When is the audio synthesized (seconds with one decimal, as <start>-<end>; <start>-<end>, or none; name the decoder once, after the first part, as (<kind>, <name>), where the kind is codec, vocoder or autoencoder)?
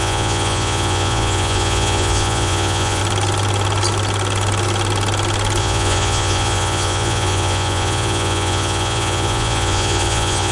0.0-3.0 (vocoder, Vocos); 5.6-10.5